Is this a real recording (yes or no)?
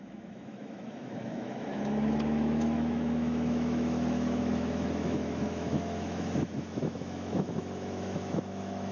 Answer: no